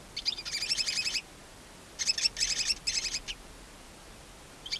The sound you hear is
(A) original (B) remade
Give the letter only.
A